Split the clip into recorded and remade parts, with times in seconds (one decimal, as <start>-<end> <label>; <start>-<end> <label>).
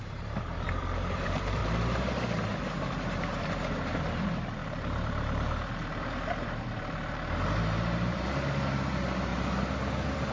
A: 0.0-1.6 remade; 1.6-2.7 recorded; 2.7-9.3 remade; 9.3-10.3 recorded